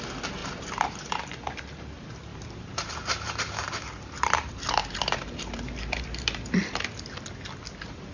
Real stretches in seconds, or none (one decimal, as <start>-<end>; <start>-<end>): 0.0-0.4; 1.1-2.3; 6.6-8.1